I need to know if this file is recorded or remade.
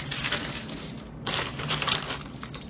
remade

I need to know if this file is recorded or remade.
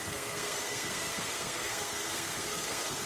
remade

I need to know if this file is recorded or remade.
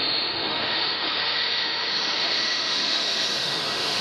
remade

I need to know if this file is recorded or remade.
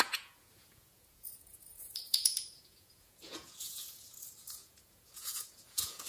remade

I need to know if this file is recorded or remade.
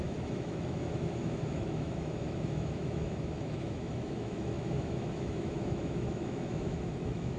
remade